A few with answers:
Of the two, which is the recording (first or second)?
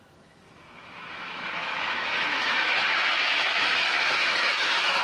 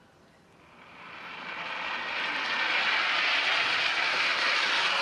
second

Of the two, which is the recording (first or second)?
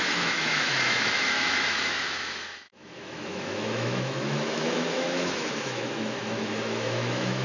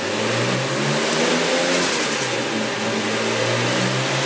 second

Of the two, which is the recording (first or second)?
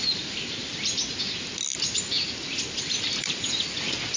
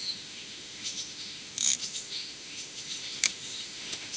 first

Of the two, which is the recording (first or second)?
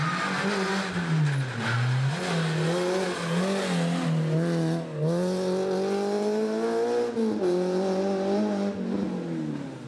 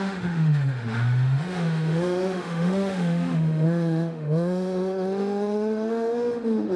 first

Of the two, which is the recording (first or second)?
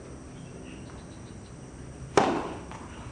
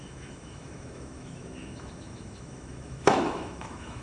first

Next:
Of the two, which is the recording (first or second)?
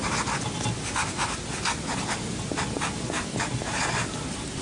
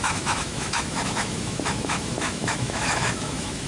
first